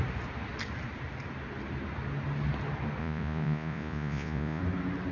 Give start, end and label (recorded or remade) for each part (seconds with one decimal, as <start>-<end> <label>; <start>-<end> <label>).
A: 0.0-3.0 recorded; 3.0-4.6 remade; 4.6-5.1 recorded